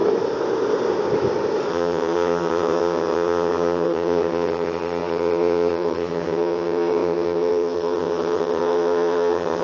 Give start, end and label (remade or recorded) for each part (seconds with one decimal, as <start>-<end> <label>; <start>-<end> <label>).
0.0-1.7 recorded; 1.7-9.6 remade